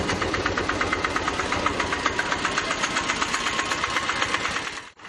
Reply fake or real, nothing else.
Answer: real